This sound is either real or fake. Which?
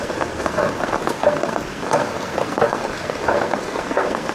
fake